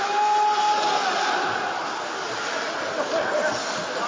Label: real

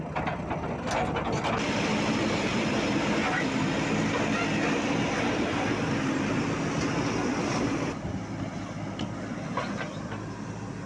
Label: real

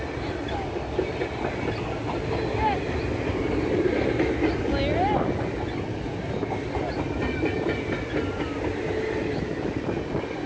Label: real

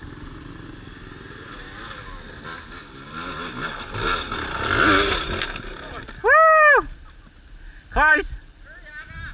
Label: real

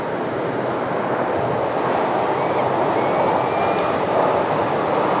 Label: real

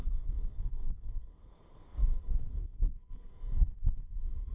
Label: fake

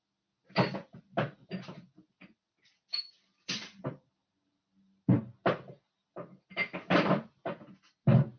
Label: real